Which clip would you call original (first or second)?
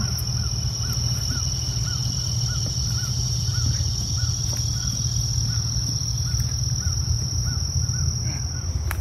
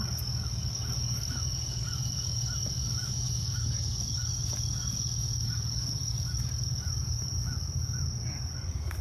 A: first